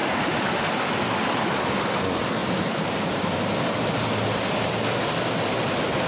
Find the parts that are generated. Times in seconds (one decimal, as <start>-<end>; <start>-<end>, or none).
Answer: 0.0-0.7; 2.4-3.5